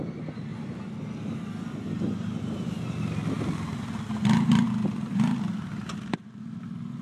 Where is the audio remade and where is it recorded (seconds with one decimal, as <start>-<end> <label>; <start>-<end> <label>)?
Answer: 0.0-7.0 recorded